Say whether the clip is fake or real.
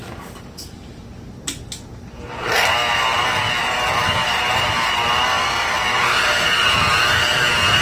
real